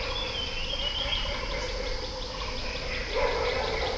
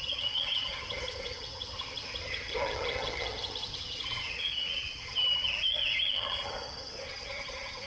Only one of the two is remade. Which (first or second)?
second